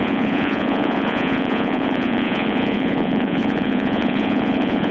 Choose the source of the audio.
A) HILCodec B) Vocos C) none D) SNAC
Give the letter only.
B